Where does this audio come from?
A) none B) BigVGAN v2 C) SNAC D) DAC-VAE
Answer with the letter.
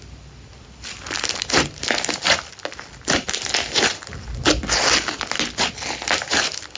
A